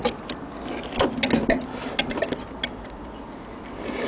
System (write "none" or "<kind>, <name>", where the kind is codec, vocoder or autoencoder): none